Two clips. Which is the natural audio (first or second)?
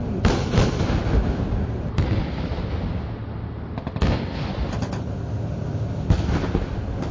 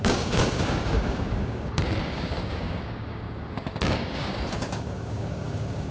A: first